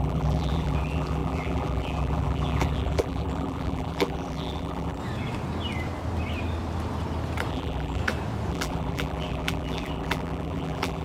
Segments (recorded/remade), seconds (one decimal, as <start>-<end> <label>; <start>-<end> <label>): 0.0-5.0 remade; 5.0-7.5 recorded; 7.5-8.0 remade; 8.0-8.5 recorded; 8.5-11.0 remade